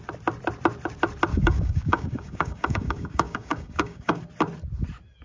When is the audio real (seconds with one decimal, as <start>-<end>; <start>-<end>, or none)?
0.0-1.3; 4.2-5.2